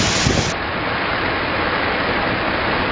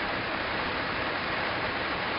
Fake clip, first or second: second